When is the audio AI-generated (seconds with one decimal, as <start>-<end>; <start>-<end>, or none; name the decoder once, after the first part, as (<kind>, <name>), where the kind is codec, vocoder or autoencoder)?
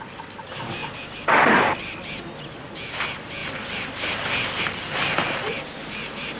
none